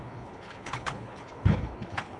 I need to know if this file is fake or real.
fake